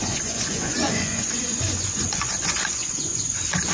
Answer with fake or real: fake